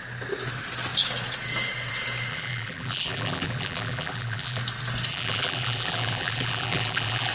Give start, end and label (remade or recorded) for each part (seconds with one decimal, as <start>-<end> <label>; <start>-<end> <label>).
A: 0.0-2.3 recorded; 2.3-4.6 remade; 4.6-5.1 recorded; 5.1-7.3 remade